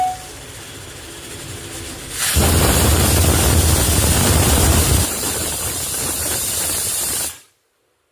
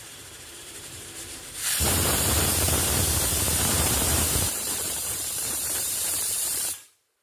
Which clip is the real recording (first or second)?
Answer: first